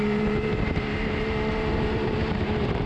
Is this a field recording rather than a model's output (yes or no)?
no